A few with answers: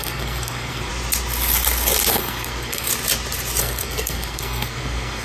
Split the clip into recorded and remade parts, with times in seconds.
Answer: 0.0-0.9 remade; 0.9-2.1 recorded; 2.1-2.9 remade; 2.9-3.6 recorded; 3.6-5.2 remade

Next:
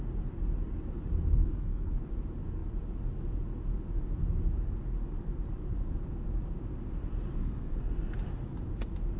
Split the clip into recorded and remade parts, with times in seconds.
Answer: 0.0-1.4 recorded; 1.4-1.9 remade; 1.9-7.4 recorded; 7.4-7.9 remade; 7.9-9.2 recorded

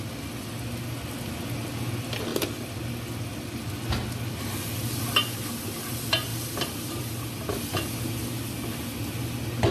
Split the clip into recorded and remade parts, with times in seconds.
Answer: 0.0-9.7 recorded

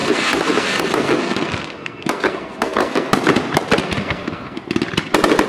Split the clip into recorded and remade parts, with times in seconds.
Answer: 0.0-3.1 remade; 3.1-3.8 recorded; 3.8-4.6 remade; 4.6-5.5 recorded

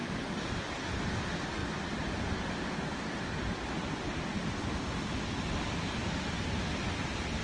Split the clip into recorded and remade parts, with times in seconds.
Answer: 0.0-7.4 recorded

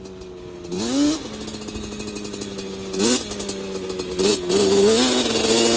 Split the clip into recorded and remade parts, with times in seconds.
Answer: 0.0-5.8 recorded

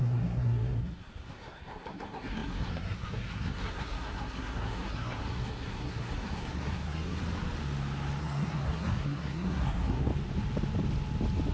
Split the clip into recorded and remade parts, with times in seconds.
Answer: 0.0-7.2 remade; 7.2-8.2 recorded; 8.2-10.1 remade; 10.1-11.5 recorded